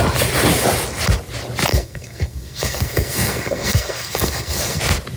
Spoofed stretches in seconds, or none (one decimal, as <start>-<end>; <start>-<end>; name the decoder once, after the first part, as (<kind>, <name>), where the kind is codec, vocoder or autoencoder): 1.7-4.8 (codec, SNAC)